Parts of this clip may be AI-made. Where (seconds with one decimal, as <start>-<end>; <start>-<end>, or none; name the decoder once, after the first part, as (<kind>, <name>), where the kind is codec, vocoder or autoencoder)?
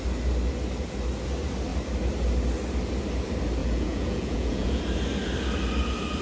3.6-4.8 (vocoder, Vocos)